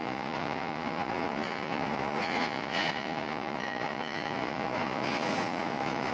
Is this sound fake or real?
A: fake